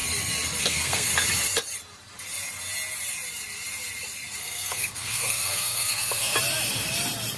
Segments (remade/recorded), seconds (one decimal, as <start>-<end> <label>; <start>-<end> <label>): 0.0-0.6 recorded; 0.6-1.1 remade; 1.1-4.4 recorded; 4.4-6.3 remade; 6.3-7.4 recorded